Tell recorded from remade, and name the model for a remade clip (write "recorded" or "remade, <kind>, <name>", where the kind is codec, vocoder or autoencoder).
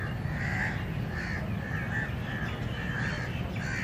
recorded